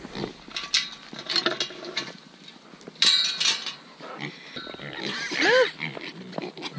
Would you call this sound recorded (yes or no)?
yes